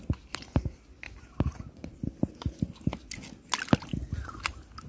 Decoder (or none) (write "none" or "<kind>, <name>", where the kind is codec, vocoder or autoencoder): none